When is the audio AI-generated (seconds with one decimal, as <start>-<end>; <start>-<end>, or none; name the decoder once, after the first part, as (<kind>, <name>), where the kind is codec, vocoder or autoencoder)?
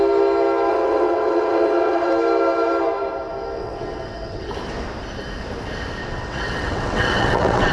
0.7-2.1 (vocoder, WaveNeXt); 3.6-4.5; 6.0-7.7